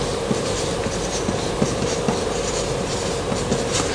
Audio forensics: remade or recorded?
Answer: remade